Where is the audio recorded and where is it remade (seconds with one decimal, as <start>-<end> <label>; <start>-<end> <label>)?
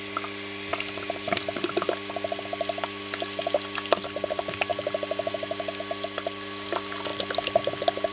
0.0-8.1 recorded